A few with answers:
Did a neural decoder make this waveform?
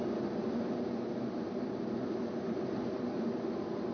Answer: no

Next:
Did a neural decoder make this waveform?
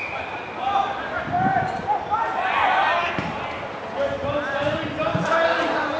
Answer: no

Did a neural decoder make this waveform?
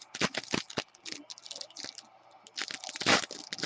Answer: no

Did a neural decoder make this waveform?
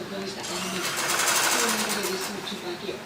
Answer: no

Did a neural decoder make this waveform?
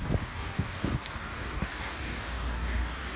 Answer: yes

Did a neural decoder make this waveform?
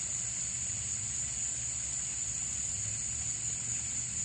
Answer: no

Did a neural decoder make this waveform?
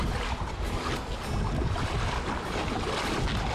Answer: no